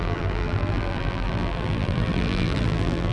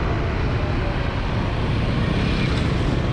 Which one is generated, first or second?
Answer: first